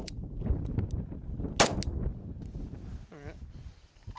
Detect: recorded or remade recorded